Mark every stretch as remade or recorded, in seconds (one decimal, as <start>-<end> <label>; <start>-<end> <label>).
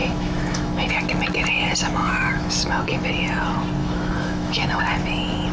0.0-0.9 remade; 0.9-2.0 recorded; 2.0-3.1 remade; 3.1-3.8 recorded; 3.8-4.8 remade; 4.8-5.5 recorded